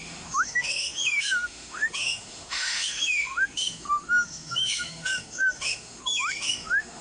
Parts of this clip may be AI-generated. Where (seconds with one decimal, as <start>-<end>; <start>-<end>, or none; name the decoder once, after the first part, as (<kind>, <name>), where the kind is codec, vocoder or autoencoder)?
0.0-7.0 (autoencoder, DAC-VAE)